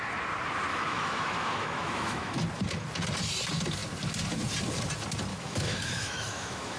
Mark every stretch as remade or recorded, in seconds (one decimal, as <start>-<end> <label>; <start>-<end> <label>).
0.0-0.7 recorded; 0.7-2.4 remade; 2.4-5.3 recorded; 5.3-6.8 remade